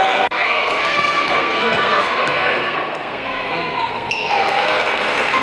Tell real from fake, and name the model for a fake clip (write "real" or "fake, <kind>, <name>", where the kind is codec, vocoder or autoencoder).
fake, codec, SNAC